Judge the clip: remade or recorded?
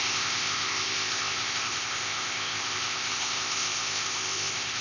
remade